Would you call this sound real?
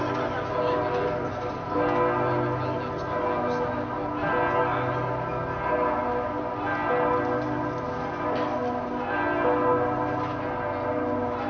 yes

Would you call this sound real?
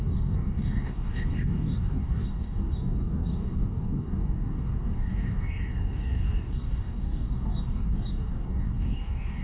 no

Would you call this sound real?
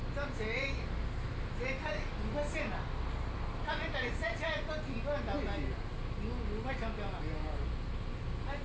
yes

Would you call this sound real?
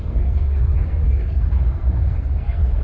no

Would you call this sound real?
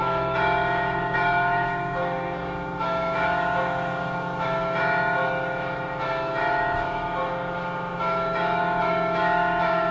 no